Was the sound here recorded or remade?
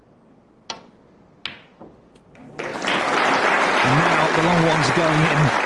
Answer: recorded